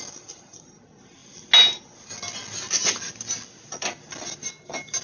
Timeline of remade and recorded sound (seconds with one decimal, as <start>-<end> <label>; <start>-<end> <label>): 0.0-5.0 recorded